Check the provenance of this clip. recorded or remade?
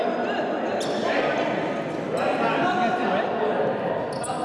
recorded